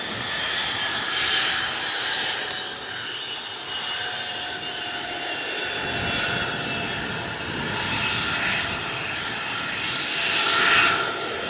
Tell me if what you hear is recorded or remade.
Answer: recorded